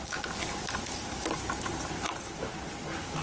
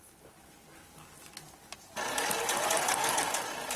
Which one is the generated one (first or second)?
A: first